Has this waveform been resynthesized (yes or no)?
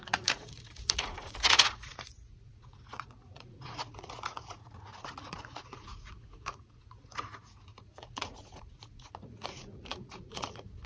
yes